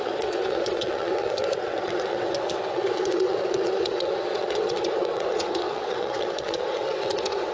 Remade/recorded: remade